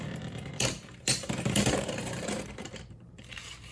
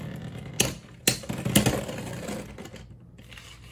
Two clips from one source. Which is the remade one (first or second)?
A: first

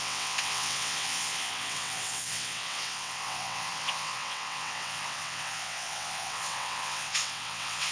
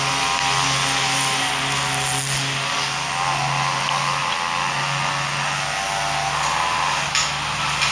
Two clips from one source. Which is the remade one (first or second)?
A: first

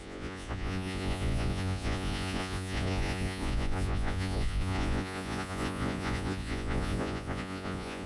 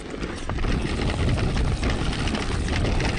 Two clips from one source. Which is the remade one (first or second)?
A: first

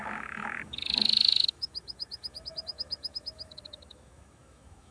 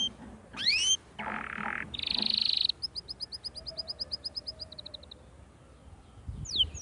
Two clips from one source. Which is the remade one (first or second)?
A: first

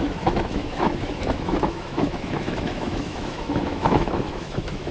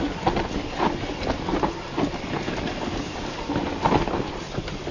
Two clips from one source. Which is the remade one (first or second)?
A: first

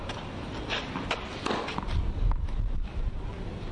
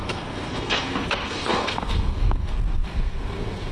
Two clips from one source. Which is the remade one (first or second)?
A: second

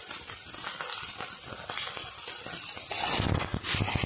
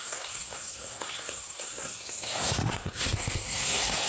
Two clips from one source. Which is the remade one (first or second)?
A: second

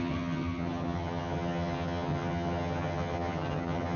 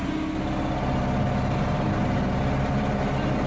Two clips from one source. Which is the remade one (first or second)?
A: first